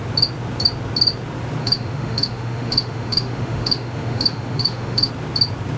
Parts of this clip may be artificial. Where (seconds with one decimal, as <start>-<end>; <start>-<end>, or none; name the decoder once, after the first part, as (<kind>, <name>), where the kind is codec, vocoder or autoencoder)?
1.6-5.1 (autoencoder, DAC-VAE)